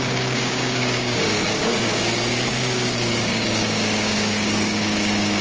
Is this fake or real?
fake